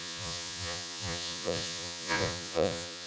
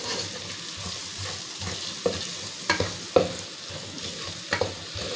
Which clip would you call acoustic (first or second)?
second